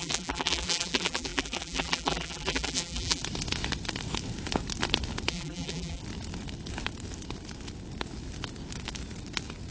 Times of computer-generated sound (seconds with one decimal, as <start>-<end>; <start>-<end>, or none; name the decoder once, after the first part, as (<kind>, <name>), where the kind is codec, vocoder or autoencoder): 0.0-3.2 (vocoder, BigVGAN v2); 5.3-6.0